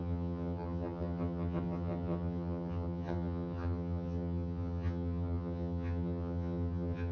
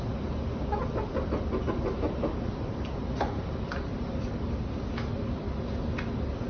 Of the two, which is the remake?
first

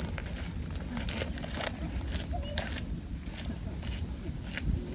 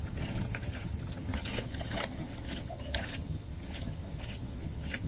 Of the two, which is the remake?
second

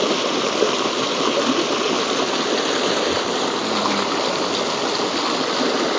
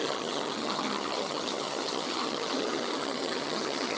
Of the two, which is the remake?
second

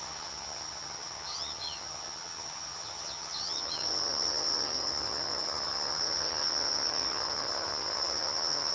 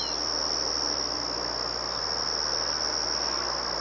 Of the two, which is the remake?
first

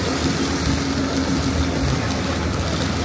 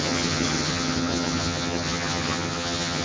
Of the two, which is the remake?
second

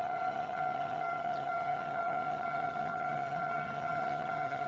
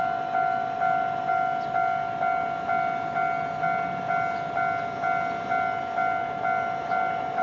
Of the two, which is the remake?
first